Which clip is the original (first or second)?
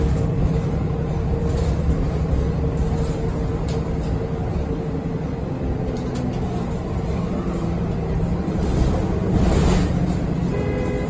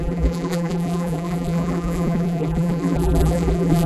first